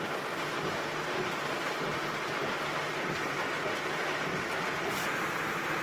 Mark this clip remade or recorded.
recorded